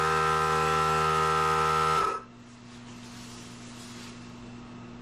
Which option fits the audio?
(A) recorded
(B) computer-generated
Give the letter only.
A